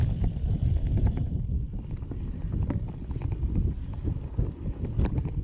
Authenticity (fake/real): real